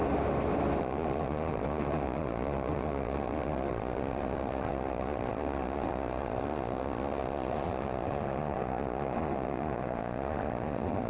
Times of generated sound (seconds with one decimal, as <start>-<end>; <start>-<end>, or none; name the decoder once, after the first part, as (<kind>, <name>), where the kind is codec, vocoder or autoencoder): 0.8-11.1 (vocoder, Vocos)